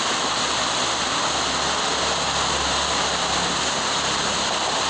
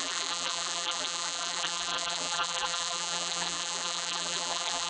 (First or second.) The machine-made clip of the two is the second